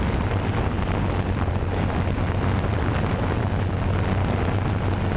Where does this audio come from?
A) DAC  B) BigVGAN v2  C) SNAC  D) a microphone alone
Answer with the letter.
D